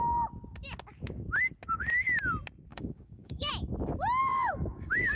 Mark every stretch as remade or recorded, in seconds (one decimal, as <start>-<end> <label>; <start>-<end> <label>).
0.0-2.7 recorded; 2.7-3.5 remade; 3.5-4.2 recorded; 4.2-5.2 remade